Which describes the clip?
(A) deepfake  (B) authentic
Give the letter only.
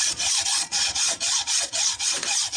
A